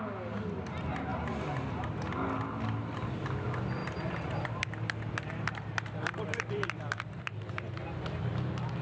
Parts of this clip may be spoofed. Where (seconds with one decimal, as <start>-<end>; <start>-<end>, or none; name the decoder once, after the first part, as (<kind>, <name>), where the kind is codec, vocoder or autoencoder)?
3.8-7.2 (vocoder, BigVGAN v2)